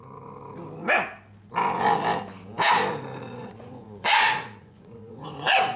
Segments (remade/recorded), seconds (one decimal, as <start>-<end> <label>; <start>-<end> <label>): 0.0-3.4 recorded; 3.4-5.8 remade